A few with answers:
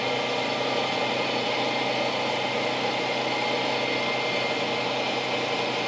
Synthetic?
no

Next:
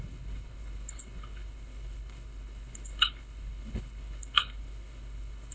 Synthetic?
yes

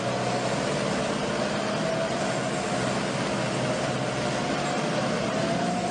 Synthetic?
no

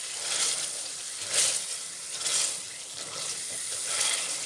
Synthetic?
no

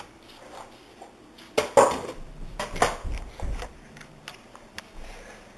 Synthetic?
no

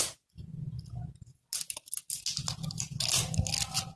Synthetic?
no